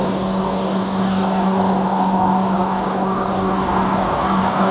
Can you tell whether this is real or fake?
fake